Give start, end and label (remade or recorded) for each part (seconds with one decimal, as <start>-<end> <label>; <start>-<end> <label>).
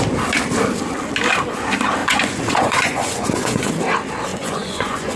0.0-2.0 recorded; 2.0-3.7 remade; 3.7-4.3 recorded; 4.3-5.2 remade